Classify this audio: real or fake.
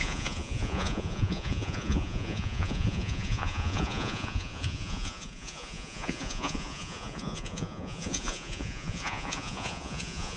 fake